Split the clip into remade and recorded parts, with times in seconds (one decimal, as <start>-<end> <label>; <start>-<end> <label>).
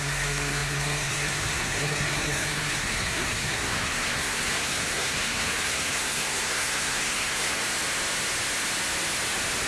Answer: 0.0-7.6 remade; 7.6-9.7 recorded